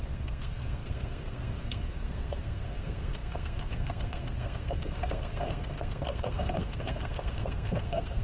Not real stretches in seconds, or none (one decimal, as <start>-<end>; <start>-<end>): 0.0-8.2